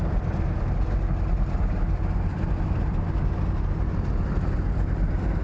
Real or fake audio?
real